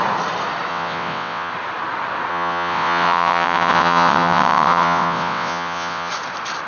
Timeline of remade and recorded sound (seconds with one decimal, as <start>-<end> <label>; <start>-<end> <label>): 0.0-0.7 recorded; 0.7-1.5 remade; 1.5-2.3 recorded; 2.3-6.1 remade; 6.1-6.7 recorded